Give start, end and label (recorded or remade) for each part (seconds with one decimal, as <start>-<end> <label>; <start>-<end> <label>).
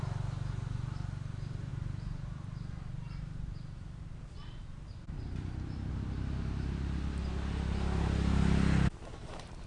0.0-1.7 recorded; 1.7-5.9 remade; 5.9-9.7 recorded